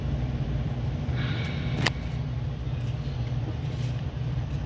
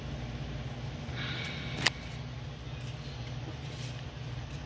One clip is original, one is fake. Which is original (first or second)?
second